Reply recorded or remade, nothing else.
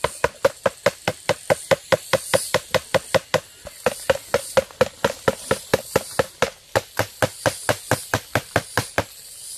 recorded